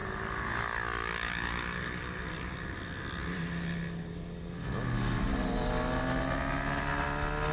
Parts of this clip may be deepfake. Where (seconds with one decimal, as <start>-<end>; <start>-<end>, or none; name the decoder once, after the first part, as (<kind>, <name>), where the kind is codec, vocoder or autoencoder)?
none